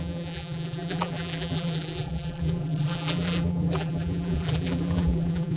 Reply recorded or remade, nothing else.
remade